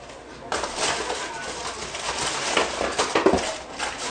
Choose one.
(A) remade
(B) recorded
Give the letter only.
B